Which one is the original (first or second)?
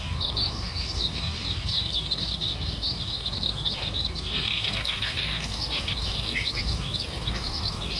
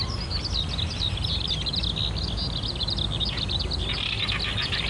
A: second